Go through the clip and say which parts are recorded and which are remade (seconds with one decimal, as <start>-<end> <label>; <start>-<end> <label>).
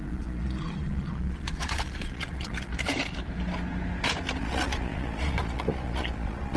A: 0.0-2.7 remade; 2.7-4.4 recorded; 4.4-6.6 remade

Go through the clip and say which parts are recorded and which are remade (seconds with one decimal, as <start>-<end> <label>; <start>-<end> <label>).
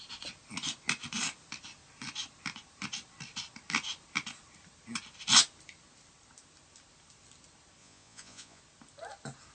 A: 0.0-7.8 recorded; 7.8-8.6 remade; 8.6-9.5 recorded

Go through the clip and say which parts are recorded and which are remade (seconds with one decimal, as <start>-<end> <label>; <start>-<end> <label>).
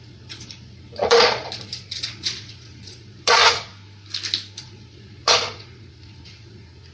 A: 0.0-3.7 remade; 3.7-4.6 recorded; 4.6-6.9 remade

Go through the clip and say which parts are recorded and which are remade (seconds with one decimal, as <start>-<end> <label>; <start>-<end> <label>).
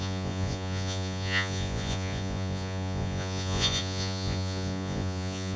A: 0.0-5.6 remade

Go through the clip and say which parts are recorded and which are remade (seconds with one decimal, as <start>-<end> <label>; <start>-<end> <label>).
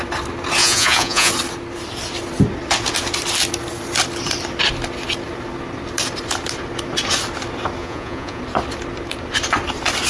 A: 0.0-0.6 recorded; 0.6-1.3 remade; 1.3-7.8 recorded; 7.8-8.4 remade; 8.4-10.1 recorded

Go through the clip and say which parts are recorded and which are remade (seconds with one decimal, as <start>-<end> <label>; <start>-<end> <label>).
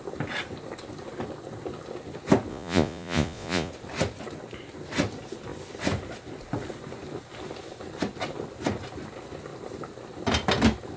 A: 0.0-2.5 recorded; 2.5-3.7 remade; 3.7-11.0 recorded